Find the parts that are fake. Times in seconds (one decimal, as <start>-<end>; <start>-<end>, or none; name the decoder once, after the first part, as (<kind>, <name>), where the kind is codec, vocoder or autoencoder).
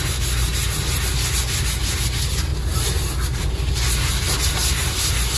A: none